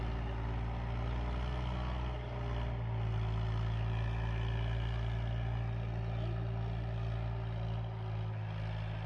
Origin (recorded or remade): recorded